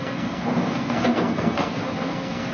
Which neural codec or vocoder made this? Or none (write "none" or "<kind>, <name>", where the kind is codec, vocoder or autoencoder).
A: codec, SNAC